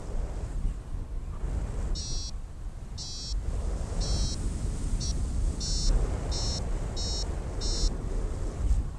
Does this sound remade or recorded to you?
recorded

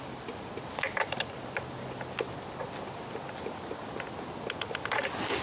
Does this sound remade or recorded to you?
recorded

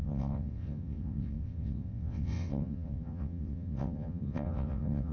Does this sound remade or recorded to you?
remade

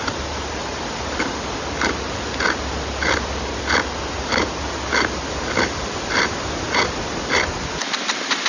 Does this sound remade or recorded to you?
recorded